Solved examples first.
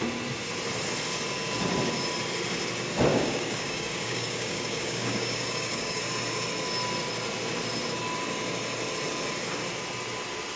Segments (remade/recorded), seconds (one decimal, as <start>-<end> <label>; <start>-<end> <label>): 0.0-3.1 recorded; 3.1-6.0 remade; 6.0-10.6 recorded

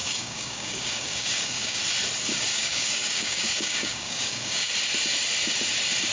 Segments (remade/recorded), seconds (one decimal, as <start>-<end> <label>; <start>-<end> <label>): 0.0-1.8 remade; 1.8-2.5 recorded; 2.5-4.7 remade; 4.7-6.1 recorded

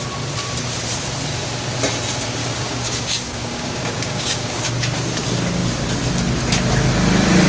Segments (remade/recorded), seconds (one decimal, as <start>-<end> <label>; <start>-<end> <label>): 0.0-2.4 recorded; 2.4-4.6 remade; 4.6-7.5 recorded

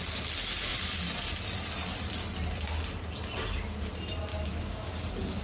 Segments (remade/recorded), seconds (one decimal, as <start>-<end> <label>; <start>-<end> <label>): 0.0-4.3 recorded; 4.3-4.9 remade; 4.9-5.4 recorded

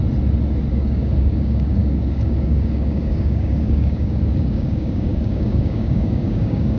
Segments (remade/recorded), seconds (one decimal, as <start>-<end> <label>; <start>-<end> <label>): 0.0-0.7 recorded; 0.7-6.8 remade

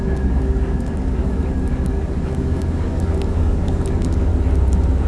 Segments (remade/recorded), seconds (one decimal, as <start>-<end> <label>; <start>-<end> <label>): 0.0-4.3 remade; 4.3-5.1 recorded